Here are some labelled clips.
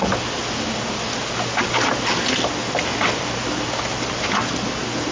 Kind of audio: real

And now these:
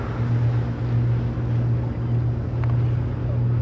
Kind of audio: real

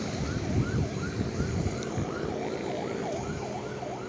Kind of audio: real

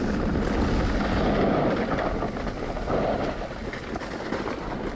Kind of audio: real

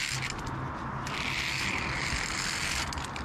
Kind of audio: real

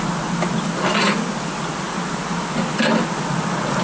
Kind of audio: real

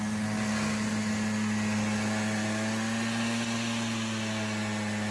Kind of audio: real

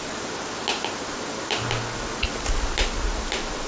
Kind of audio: real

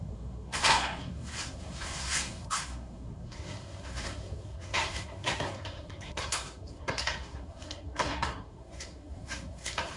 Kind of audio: fake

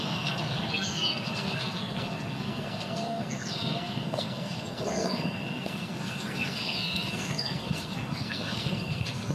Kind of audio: fake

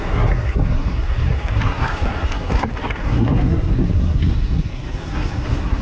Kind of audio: fake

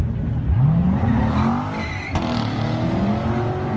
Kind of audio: real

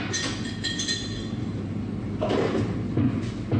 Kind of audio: real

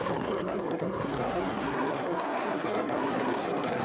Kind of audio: fake